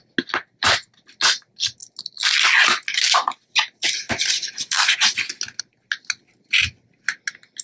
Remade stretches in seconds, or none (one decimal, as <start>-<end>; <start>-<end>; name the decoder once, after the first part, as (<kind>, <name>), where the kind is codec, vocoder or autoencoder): none